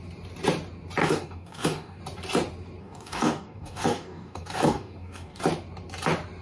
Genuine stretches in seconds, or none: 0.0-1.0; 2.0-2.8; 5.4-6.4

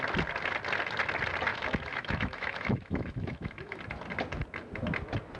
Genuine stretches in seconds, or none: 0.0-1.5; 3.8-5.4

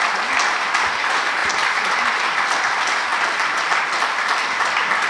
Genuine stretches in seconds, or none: 0.0-3.1